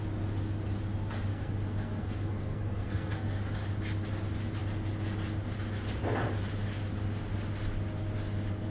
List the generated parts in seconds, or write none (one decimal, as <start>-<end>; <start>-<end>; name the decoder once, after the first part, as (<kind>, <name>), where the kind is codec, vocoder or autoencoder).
1.3-3.4 (codec, SNAC)

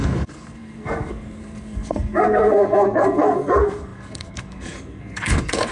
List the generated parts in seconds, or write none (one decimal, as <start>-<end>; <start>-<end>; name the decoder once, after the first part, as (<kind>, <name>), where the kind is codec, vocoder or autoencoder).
0.0-5.7 (codec, SNAC)

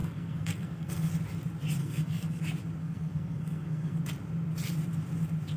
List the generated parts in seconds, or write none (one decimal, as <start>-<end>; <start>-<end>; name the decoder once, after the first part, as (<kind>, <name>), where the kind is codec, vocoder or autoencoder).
0.0-1.1 (codec, SNAC); 1.8-2.4; 2.8-4.0

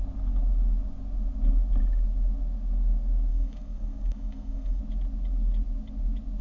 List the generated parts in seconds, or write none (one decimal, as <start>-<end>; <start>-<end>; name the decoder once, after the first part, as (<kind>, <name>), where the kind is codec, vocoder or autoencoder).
3.3-4.8 (codec, SNAC)

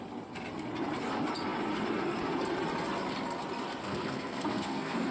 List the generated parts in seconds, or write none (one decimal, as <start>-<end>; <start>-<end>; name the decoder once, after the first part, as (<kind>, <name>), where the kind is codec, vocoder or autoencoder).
3.8-5.1 (codec, SNAC)

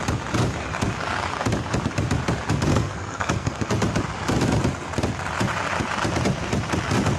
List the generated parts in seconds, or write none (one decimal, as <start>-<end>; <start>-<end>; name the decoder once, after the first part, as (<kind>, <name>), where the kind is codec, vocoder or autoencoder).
2.7-3.7 (codec, SNAC)

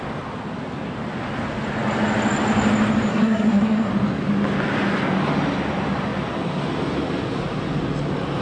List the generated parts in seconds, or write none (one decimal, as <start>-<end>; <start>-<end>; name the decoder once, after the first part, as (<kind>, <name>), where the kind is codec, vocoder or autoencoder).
3.1-3.9 (codec, SNAC)

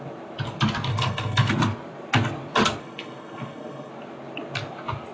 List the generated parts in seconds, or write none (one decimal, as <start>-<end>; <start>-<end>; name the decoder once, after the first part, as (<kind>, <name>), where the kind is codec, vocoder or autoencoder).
0.9-1.5 (codec, SNAC); 2.8-3.9